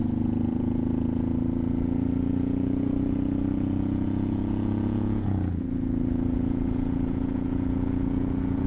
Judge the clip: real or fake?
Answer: fake